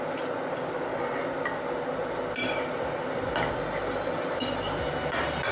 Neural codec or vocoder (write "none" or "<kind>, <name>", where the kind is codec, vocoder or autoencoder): none